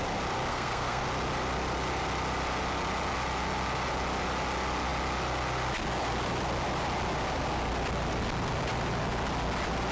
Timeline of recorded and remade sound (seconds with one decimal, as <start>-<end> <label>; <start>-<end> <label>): 0.0-0.5 recorded; 0.5-1.0 remade; 1.0-9.9 recorded